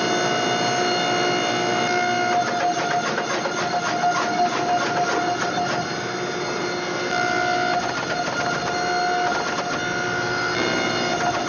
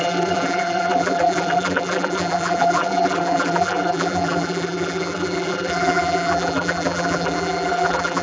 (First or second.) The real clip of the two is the first